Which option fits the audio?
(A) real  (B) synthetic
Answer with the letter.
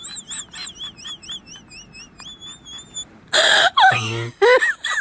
A